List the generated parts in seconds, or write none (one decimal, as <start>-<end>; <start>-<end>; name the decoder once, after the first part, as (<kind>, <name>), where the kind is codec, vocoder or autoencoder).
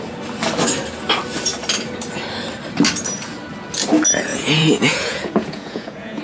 4.3-6.2 (vocoder, Vocos)